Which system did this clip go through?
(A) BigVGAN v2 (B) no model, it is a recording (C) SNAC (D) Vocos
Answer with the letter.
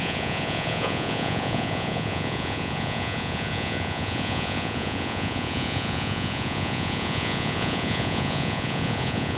D